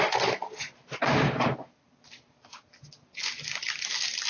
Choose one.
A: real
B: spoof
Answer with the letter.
A